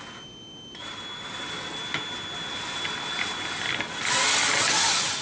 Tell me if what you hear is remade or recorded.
recorded